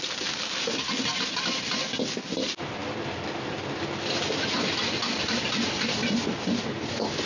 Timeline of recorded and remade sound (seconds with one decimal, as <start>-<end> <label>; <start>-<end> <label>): 0.0-7.2 recorded